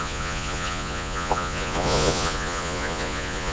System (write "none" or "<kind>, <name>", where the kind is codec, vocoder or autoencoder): vocoder, Vocos